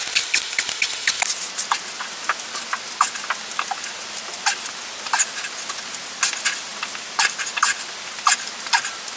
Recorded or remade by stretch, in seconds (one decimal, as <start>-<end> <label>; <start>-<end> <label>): 0.0-9.2 recorded